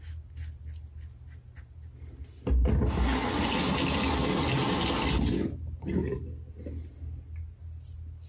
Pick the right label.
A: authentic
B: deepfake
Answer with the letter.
A